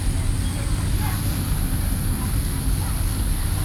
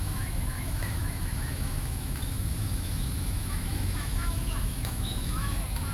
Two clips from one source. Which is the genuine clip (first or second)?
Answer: first